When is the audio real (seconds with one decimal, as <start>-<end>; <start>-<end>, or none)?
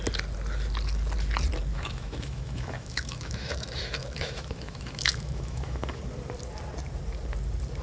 0.0-1.7; 6.0-7.8